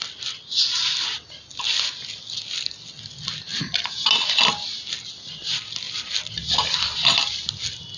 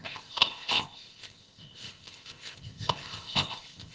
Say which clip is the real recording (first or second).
first